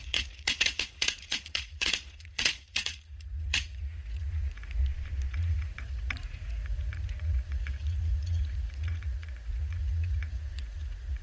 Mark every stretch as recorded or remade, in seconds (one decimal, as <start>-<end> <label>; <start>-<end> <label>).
0.0-4.8 remade; 4.8-5.3 recorded; 5.3-11.2 remade